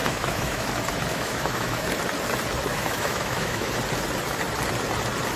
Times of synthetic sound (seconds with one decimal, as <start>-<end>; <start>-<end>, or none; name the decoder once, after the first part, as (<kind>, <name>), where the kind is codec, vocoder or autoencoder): 0.0-0.7 (autoencoder, DAC-VAE); 1.1-1.9; 2.7-3.7